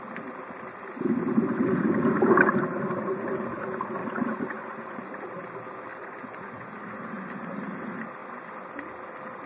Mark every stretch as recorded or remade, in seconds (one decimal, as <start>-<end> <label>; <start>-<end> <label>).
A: 0.0-4.0 recorded; 4.0-5.0 remade; 5.0-5.9 recorded; 5.9-7.3 remade; 7.3-8.2 recorded; 8.2-8.7 remade; 8.7-9.5 recorded